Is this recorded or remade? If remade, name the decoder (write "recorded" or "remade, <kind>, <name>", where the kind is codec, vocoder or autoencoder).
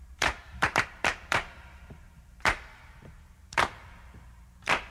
remade, vocoder, BigVGAN v2